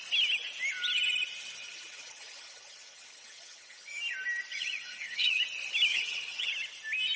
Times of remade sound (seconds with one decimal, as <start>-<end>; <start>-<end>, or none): 1.6-4.0; 4.5-5.4; 5.9-6.5